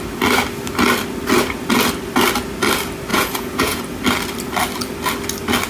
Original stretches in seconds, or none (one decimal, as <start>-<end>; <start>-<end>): 0.0-3.1; 3.8-5.7